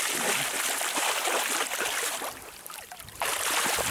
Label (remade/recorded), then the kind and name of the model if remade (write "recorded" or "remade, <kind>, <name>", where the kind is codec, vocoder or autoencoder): recorded